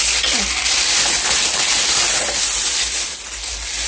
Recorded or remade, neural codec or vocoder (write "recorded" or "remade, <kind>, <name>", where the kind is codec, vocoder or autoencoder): recorded